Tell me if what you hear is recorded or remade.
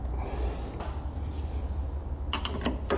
recorded